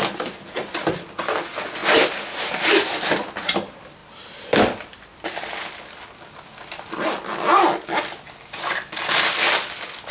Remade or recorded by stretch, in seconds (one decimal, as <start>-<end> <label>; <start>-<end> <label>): 0.0-10.1 recorded